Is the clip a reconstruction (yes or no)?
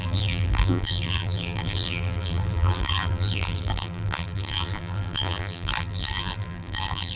yes